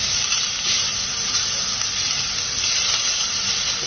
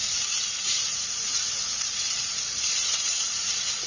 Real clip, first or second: first